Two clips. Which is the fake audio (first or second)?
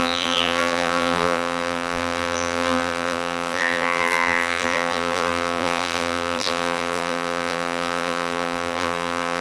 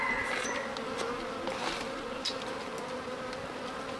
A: first